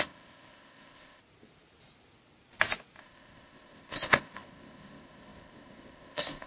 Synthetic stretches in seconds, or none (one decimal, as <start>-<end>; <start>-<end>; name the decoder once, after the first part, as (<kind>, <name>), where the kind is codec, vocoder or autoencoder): 0.0-1.2 (codec, ZipCodec); 3.0-6.5